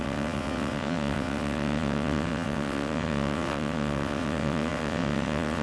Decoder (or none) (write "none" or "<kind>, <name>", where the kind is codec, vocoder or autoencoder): vocoder, WaveNeXt